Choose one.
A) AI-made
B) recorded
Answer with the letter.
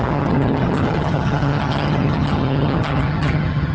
A